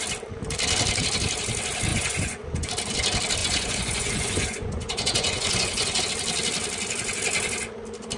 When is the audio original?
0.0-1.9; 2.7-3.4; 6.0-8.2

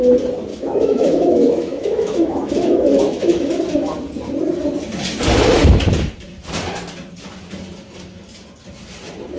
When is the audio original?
0.0-0.5; 3.5-9.4